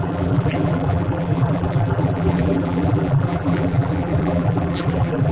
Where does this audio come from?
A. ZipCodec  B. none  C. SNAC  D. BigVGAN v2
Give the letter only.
D